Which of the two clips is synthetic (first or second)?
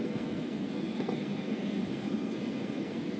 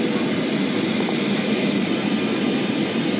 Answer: first